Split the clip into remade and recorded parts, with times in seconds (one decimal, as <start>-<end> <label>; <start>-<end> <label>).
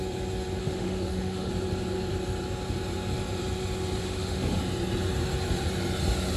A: 0.0-0.6 recorded; 0.6-1.5 remade; 1.5-4.0 recorded; 4.0-4.6 remade; 4.6-6.4 recorded